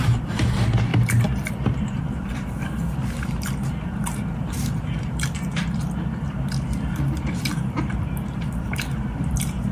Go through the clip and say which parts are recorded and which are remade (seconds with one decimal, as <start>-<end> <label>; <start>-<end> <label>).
0.0-0.9 remade; 0.9-1.5 recorded; 1.5-9.7 remade